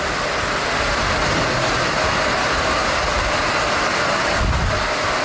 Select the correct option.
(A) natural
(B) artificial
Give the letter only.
A